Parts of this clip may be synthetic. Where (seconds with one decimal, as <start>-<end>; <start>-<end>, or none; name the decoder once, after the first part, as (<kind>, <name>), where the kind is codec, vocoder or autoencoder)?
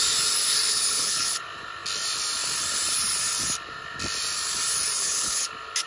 0.7-1.4 (codec, HILCodec); 5.0-5.5